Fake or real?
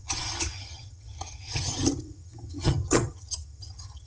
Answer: fake